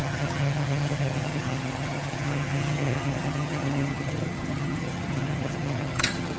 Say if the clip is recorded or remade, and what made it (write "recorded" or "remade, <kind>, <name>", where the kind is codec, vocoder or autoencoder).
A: remade, vocoder, HiFi-GAN